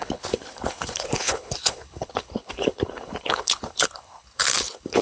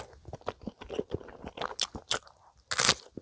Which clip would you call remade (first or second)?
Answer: first